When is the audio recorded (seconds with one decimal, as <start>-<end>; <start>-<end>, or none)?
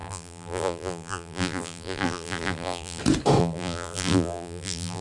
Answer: 3.0-3.4